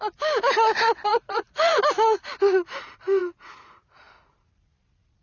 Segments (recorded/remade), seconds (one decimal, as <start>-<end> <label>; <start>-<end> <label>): 0.0-1.1 recorded; 1.1-1.8 remade; 1.8-3.2 recorded; 3.2-4.1 remade; 4.1-5.2 recorded

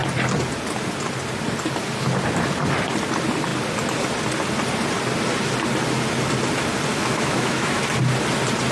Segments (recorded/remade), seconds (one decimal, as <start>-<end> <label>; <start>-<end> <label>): 0.0-6.9 recorded; 6.9-7.8 remade; 7.8-8.7 recorded

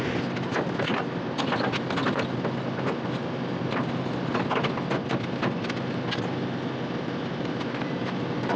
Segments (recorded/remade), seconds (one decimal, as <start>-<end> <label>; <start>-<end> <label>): 0.0-8.6 recorded